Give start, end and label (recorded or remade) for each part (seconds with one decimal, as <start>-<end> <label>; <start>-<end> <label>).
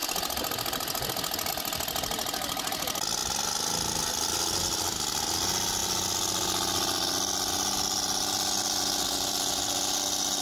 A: 0.0-10.4 recorded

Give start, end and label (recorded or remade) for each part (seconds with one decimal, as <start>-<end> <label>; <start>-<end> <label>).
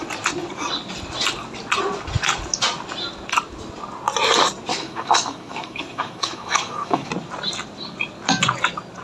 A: 0.0-4.7 recorded; 4.7-7.1 remade; 7.1-9.0 recorded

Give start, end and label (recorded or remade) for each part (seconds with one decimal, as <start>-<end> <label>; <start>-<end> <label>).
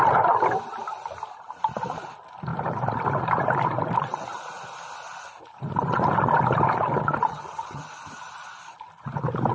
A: 0.0-7.3 recorded; 7.3-7.8 remade; 7.8-9.5 recorded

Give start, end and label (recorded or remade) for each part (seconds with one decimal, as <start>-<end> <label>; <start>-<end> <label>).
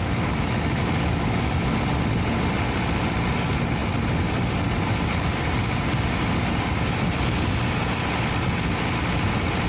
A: 0.0-1.7 remade; 1.7-9.7 recorded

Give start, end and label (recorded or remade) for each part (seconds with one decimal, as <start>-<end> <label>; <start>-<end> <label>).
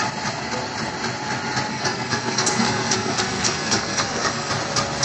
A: 0.0-1.7 recorded; 1.7-4.5 remade; 4.5-5.0 recorded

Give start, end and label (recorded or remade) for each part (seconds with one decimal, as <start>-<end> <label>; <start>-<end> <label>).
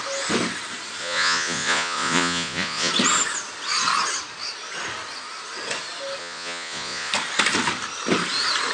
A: 0.0-1.0 recorded; 1.0-2.9 remade; 2.9-6.2 recorded; 6.2-7.1 remade; 7.1-8.7 recorded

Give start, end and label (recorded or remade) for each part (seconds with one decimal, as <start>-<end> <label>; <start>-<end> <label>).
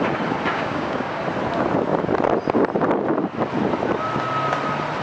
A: 0.0-0.5 recorded; 0.5-1.2 remade; 1.2-5.0 recorded